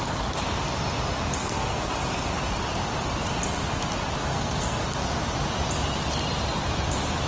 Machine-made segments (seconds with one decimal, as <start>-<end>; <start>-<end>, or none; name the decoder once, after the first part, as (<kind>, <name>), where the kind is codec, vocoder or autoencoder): 1.4-2.3 (codec, SNAC); 4.3-4.8